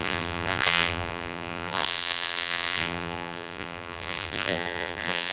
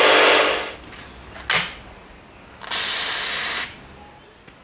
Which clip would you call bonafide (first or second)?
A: second